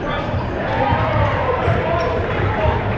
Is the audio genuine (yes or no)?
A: no